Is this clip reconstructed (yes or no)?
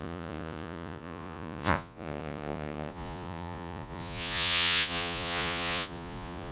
yes